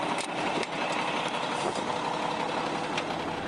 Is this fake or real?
real